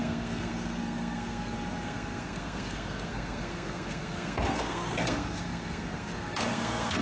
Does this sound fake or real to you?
fake